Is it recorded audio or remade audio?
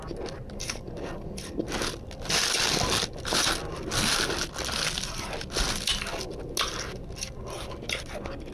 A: recorded